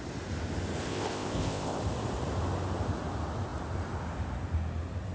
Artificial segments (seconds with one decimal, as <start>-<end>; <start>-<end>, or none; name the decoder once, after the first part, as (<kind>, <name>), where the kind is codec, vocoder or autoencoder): 0.8-1.8 (codec, ZipCodec)